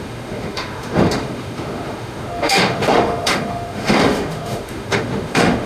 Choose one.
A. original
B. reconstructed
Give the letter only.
B